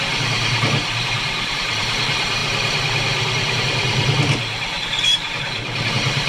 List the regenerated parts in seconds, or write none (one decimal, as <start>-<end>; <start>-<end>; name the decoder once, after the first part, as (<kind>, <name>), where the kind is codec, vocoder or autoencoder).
0.0-6.3 (vocoder, BigVGAN v2)